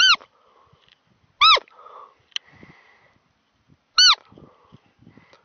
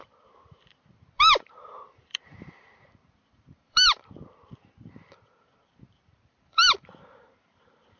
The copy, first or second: second